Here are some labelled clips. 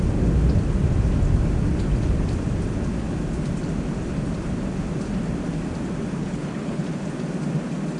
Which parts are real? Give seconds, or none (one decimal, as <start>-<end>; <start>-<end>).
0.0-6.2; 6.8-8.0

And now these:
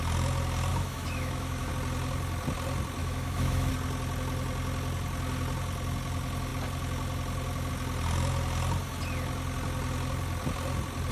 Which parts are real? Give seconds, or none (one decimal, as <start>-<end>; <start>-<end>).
0.0-0.7; 1.7-3.0; 3.7-11.1

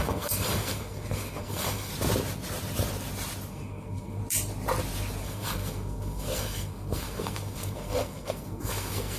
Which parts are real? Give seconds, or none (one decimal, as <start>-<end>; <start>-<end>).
1.9-3.5; 4.2-5.2

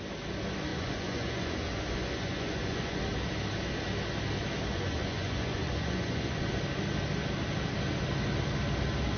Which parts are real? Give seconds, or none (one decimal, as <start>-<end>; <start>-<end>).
0.0-0.7; 3.0-4.7; 6.6-9.2

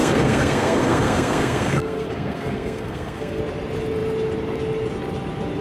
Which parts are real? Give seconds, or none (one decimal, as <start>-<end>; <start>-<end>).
3.4-5.6

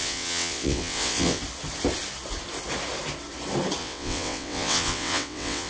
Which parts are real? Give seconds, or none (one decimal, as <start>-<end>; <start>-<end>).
1.4-3.8

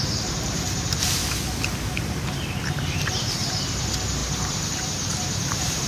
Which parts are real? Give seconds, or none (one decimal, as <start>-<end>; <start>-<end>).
1.2-2.0